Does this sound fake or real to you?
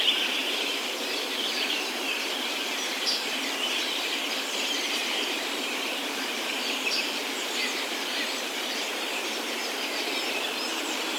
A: fake